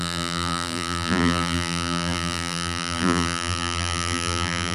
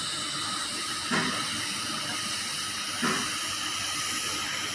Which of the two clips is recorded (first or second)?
second